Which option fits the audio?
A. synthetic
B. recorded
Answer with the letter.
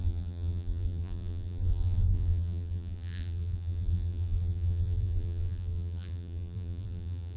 A